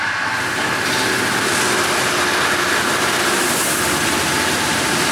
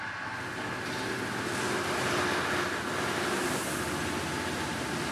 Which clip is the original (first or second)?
second